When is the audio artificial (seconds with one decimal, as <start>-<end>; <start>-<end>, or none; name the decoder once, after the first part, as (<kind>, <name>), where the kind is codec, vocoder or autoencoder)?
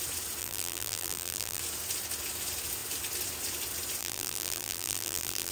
0.4-1.6 (vocoder, BigVGAN v2); 4.0-5.5